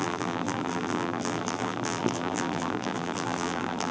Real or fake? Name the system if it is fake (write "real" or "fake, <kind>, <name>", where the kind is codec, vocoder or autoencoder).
fake, vocoder, BigVGAN v2